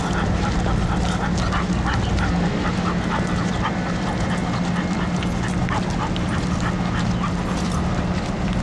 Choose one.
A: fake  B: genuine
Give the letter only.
B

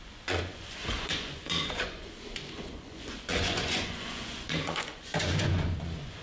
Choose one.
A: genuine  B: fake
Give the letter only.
B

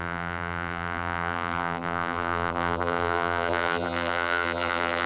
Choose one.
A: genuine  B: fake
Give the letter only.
B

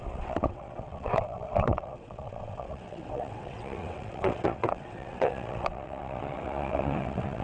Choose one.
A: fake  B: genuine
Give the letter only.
A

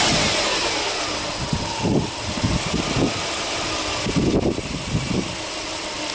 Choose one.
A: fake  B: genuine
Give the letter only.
B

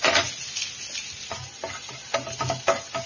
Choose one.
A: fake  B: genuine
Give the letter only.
B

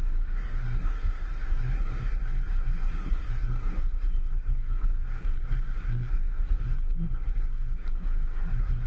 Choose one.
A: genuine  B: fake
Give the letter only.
B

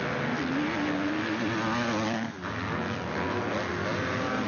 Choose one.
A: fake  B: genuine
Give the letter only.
B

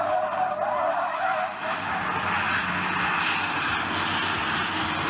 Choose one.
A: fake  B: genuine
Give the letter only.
B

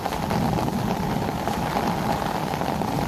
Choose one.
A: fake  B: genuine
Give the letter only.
B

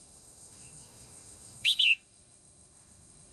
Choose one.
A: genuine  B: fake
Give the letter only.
B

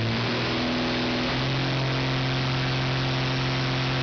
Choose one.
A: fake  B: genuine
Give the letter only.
B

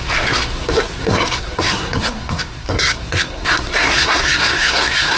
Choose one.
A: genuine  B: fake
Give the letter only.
B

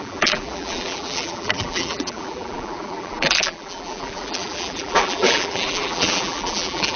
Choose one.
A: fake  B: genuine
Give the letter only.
A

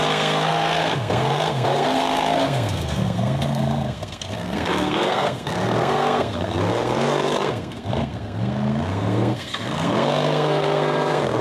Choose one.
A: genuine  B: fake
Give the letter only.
B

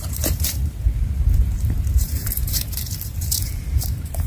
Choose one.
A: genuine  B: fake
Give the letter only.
B